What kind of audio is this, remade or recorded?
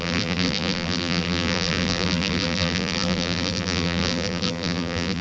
remade